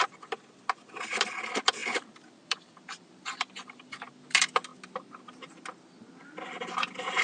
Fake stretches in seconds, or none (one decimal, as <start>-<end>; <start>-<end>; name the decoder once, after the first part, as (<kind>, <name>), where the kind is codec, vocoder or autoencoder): 1.8-4.1 (vocoder, BigVGAN v2)